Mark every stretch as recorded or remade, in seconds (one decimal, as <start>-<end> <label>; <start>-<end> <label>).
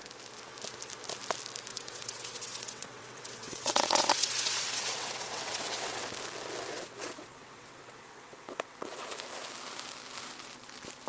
0.0-1.7 recorded; 1.7-6.0 remade; 6.0-6.7 recorded; 6.7-9.1 remade; 9.1-11.1 recorded